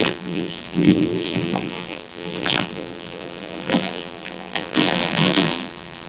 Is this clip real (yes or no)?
no